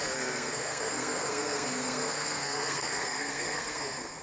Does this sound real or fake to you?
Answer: fake